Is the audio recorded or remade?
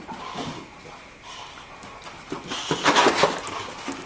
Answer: recorded